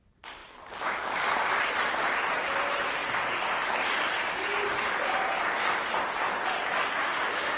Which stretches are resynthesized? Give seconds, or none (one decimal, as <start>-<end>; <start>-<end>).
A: 6.7-7.6